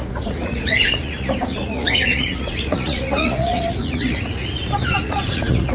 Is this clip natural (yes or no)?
no